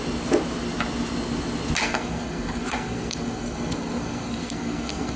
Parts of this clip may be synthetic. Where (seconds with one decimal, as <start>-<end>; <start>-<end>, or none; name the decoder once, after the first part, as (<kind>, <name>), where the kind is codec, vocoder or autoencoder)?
1.8-5.2 (codec, SNAC)